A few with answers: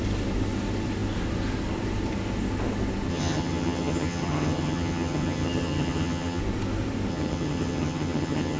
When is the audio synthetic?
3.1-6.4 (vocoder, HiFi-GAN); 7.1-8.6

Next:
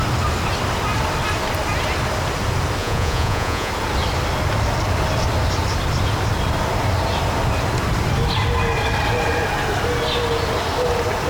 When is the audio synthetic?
2.8-3.7 (vocoder, Vocos)

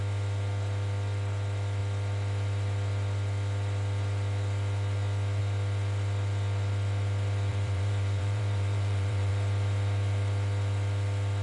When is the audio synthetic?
7.5-9.3 (vocoder, BigVGAN v2)